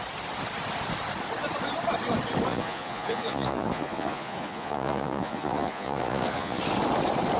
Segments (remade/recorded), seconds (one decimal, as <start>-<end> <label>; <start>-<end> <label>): 0.0-2.5 recorded; 2.5-6.6 remade; 6.6-7.4 recorded